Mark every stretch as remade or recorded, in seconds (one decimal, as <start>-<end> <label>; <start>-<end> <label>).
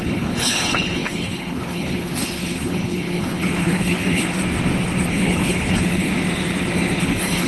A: 0.0-4.4 remade; 4.4-5.1 recorded; 5.1-6.1 remade; 6.1-7.0 recorded; 7.0-7.5 remade